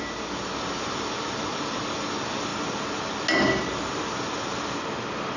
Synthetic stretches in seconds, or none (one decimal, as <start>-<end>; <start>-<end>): none